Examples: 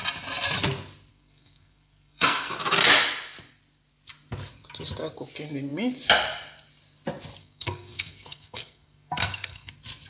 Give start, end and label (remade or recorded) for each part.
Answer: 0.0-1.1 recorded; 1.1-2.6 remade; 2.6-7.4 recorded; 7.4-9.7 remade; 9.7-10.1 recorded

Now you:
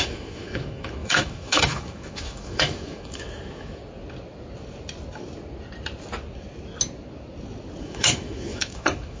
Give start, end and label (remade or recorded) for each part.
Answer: 0.0-3.8 remade; 3.8-7.8 recorded; 7.8-9.2 remade

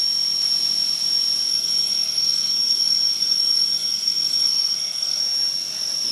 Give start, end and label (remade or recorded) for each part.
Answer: 0.0-1.5 recorded; 1.5-5.2 remade; 5.2-6.1 recorded

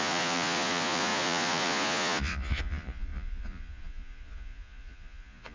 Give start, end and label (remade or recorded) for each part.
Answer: 0.0-5.5 remade

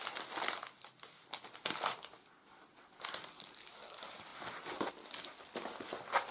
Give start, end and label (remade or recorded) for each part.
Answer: 0.0-6.3 recorded

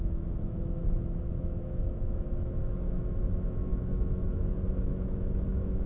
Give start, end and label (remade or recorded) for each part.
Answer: 0.0-0.8 remade; 0.8-1.4 recorded; 1.4-5.9 remade